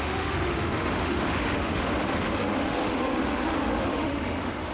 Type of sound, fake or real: fake